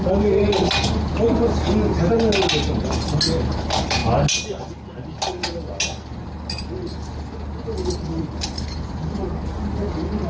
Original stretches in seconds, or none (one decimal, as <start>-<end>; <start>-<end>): 0.0-10.3